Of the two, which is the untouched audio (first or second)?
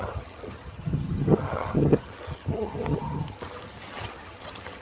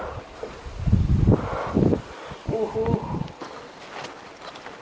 second